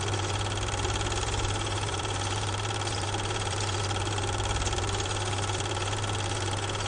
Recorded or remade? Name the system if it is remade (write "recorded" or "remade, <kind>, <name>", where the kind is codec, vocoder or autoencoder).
remade, vocoder, BigVGAN v2